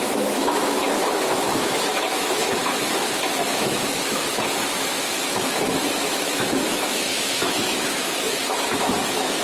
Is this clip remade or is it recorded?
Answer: remade